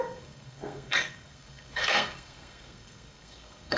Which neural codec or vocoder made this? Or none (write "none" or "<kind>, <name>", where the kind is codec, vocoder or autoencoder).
codec, SNAC